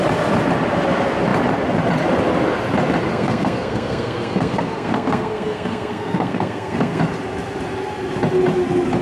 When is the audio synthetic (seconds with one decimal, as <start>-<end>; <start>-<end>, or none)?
3.1-7.0